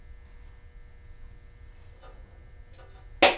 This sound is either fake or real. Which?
real